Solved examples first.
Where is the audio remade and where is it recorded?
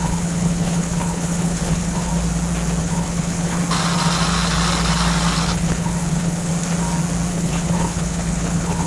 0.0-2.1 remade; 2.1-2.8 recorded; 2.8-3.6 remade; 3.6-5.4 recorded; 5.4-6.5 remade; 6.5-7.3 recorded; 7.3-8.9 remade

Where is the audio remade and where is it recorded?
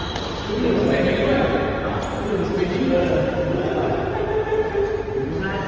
0.0-5.7 recorded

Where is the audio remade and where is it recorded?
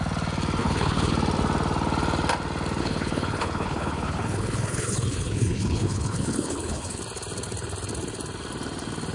0.0-0.6 recorded; 0.6-1.1 remade; 1.1-2.8 recorded; 2.8-7.0 remade; 7.0-9.1 recorded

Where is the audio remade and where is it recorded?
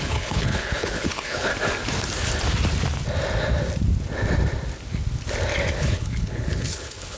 0.0-1.5 remade; 1.5-5.8 recorded; 5.8-7.2 remade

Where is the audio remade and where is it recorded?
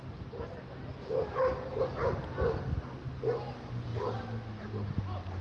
0.0-5.4 recorded